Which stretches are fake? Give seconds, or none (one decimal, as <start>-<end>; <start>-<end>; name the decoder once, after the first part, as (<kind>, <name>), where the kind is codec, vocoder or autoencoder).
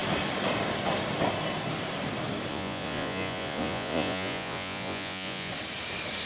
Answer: 2.5-5.5 (vocoder, Vocos)